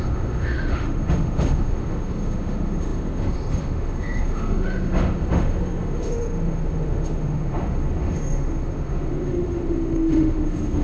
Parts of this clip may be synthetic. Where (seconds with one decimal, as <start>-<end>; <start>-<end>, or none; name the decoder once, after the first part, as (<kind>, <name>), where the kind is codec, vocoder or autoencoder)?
0.0-10.8 (autoencoder, DAC-VAE)